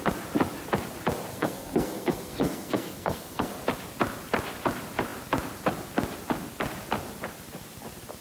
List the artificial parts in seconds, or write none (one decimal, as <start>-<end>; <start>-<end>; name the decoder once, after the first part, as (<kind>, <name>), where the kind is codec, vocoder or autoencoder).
1.3-3.5 (codec, SNAC)

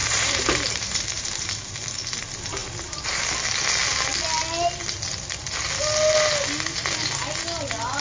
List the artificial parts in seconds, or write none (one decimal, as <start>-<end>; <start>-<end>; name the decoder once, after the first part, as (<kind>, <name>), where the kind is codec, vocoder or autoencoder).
0.0-2.2 (vocoder, BigVGAN v2); 2.6-3.2

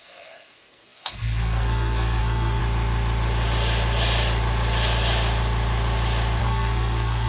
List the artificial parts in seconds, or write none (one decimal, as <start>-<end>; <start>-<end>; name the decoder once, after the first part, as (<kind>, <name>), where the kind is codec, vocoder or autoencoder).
0.0-2.6 (codec, SNAC); 6.4-7.3

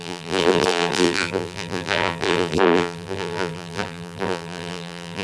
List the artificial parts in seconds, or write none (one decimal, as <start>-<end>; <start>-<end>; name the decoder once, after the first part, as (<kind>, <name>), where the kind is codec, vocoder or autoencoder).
0.0-5.2 (vocoder, BigVGAN v2)

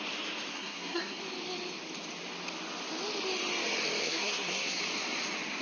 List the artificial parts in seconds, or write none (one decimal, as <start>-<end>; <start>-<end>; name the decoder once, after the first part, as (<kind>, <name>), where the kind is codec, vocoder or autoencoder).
0.5-1.2 (codec, SNAC); 4.0-4.8

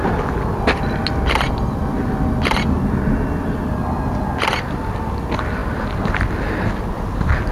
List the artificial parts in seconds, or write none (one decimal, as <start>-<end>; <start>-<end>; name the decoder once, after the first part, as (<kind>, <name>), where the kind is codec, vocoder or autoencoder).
none